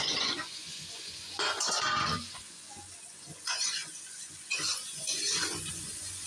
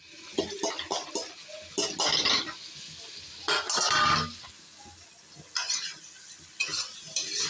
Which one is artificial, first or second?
first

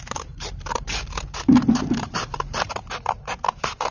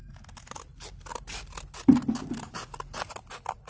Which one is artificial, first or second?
first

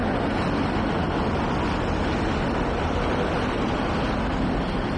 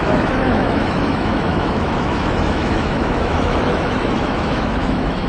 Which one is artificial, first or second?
second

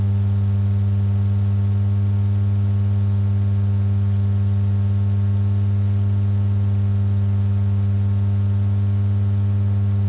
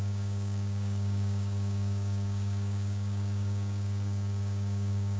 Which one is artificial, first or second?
second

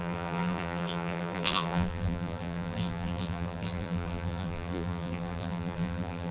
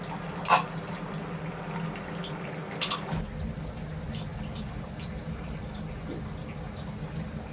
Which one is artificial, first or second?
first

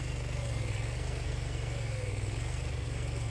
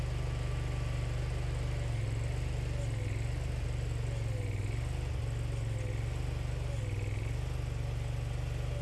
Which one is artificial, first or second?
first